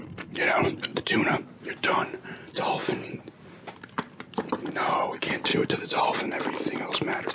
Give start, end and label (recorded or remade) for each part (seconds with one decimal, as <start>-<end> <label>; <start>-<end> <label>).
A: 0.0-7.3 recorded